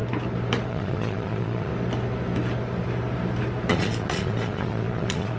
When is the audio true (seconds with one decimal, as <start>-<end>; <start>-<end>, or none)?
0.0-0.7; 1.7-3.7